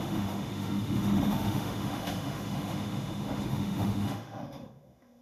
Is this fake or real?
fake